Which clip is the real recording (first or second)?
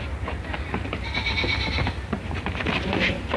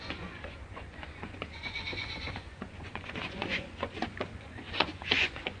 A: first